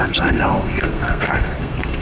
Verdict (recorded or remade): remade